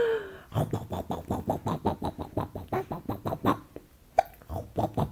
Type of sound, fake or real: real